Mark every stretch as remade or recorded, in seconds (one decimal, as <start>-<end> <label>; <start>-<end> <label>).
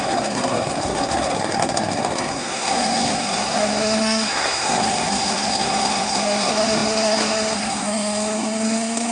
0.0-9.1 remade